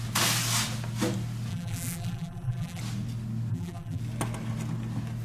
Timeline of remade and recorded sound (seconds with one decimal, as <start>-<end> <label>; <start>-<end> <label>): 0.0-1.5 recorded; 1.5-2.8 remade; 2.8-3.5 recorded; 3.5-4.0 remade; 4.0-5.2 recorded